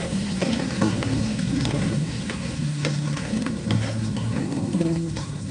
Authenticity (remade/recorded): remade